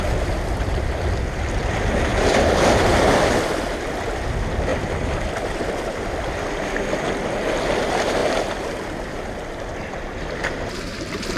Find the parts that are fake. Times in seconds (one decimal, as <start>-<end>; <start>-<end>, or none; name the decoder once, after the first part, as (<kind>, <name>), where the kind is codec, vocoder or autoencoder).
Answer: none